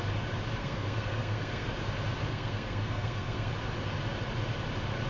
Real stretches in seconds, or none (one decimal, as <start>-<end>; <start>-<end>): 0.0-0.6; 1.7-2.3; 3.5-5.1